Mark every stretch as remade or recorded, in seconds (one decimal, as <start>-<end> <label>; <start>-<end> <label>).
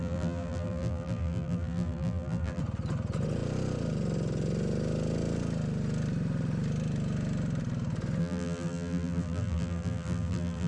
0.0-2.6 remade; 2.6-8.2 recorded; 8.2-10.7 remade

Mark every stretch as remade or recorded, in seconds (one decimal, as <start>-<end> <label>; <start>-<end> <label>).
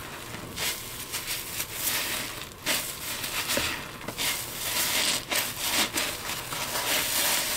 0.0-7.6 recorded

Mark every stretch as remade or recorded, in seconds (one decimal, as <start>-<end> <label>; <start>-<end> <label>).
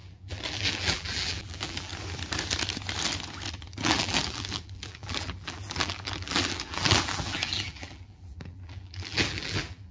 0.0-1.9 remade; 1.9-3.5 recorded; 3.5-9.9 remade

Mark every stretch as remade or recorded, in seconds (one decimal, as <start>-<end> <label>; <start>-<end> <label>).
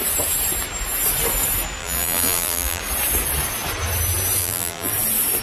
0.0-1.8 recorded; 1.8-2.8 remade; 2.8-4.4 recorded; 4.4-4.9 remade; 4.9-5.4 recorded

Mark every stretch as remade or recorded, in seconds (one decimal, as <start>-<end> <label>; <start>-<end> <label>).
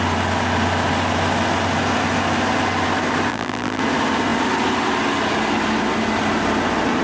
0.0-3.3 recorded; 3.3-3.8 remade; 3.8-7.0 recorded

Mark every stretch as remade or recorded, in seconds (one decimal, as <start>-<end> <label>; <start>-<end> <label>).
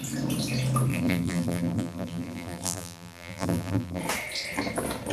0.0-0.9 recorded; 0.9-4.0 remade; 4.0-5.1 recorded